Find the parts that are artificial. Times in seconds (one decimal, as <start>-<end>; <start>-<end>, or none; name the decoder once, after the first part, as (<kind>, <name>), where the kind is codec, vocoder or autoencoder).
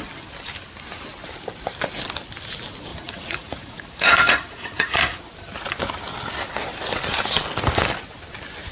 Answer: 2.9-5.2 (vocoder, Vocos)